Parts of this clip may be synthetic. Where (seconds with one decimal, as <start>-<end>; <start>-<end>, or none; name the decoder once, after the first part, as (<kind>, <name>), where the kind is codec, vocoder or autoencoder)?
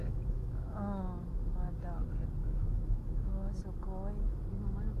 0.0-1.0 (autoencoder, DAC-VAE); 2.4-3.6